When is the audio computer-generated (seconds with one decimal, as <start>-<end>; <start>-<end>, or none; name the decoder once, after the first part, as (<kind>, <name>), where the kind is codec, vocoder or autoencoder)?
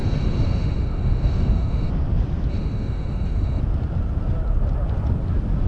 0.0-1.9 (autoencoder, DAC-VAE); 2.5-3.6